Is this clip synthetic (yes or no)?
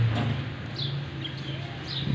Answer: no